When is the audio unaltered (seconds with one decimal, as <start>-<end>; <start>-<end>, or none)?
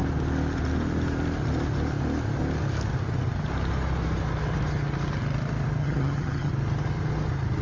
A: 0.0-5.8; 6.5-7.6